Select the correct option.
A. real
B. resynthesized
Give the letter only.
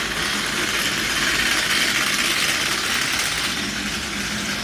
A